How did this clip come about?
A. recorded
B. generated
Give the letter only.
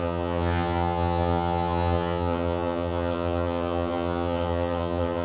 B